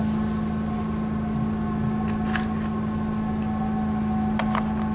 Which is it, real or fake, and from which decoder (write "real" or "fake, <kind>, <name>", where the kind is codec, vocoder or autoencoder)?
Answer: real